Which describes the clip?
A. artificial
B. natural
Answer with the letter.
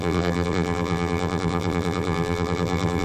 A